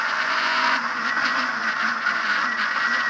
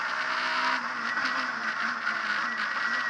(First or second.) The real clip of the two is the second